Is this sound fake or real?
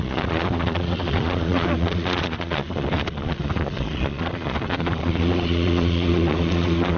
fake